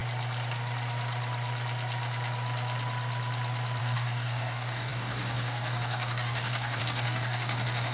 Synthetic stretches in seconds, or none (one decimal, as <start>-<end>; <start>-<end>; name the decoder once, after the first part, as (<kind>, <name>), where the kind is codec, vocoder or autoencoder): 3.8-7.9 (codec, DAC)